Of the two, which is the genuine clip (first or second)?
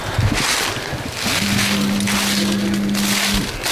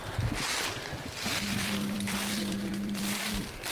first